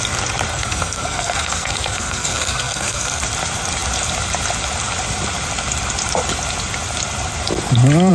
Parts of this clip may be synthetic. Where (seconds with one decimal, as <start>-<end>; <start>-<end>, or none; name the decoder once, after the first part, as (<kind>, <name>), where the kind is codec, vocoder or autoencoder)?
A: 0.5-3.2 (codec, SNAC)